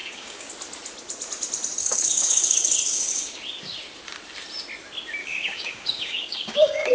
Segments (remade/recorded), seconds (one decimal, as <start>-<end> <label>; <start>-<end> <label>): 0.0-0.5 remade; 0.5-1.8 recorded; 1.8-3.4 remade; 3.4-5.2 recorded; 5.2-6.9 remade